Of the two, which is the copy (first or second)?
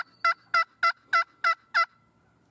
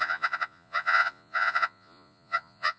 second